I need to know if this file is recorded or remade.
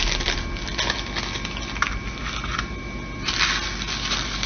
recorded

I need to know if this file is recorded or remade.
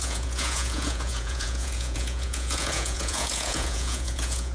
remade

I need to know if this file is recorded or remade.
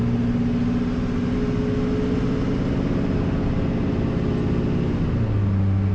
recorded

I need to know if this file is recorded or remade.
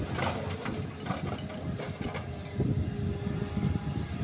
recorded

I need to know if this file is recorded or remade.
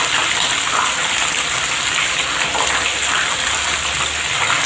recorded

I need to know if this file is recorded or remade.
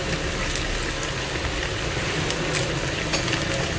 recorded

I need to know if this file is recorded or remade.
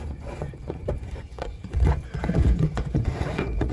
remade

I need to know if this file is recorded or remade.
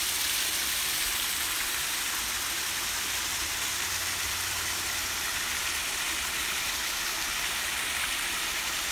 recorded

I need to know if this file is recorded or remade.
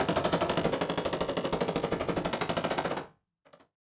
recorded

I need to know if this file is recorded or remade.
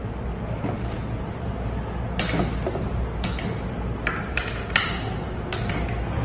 recorded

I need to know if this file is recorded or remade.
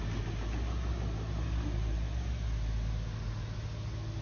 recorded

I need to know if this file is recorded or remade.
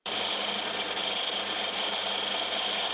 recorded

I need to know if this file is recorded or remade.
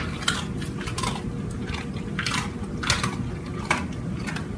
recorded